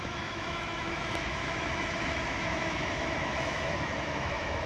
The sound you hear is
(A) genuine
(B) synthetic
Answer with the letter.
B